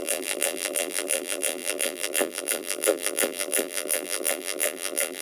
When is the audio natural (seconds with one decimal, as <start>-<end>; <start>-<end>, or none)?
none